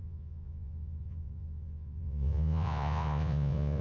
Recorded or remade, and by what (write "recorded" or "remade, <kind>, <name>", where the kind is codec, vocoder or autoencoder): remade, vocoder, Vocos